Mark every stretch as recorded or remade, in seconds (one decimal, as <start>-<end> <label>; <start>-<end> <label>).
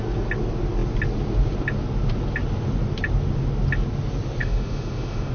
0.0-4.4 recorded; 4.4-5.3 remade